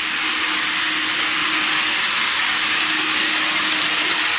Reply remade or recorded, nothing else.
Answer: recorded